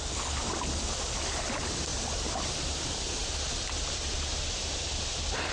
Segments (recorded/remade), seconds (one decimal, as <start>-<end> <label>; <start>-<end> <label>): 0.0-5.5 recorded